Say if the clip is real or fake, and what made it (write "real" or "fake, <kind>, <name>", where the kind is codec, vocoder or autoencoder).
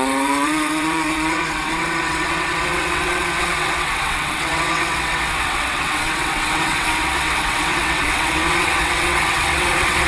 fake, vocoder, WaveNeXt